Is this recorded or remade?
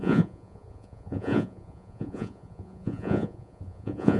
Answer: remade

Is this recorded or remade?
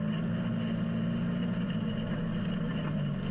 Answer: recorded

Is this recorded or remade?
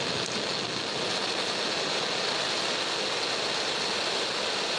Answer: recorded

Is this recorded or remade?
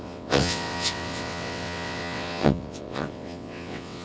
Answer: remade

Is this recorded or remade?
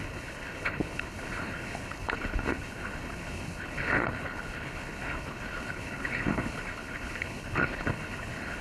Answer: remade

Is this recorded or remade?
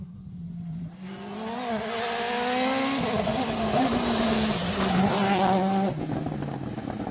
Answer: recorded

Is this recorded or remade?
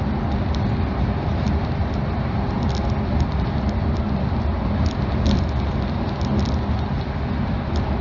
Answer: recorded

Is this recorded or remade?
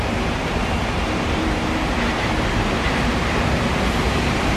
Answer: remade